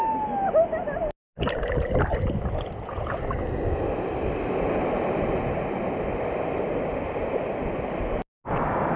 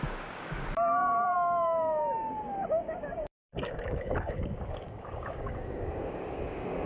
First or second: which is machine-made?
second